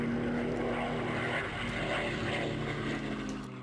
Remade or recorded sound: recorded